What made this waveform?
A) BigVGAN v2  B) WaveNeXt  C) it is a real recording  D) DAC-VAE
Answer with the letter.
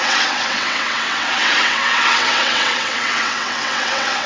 B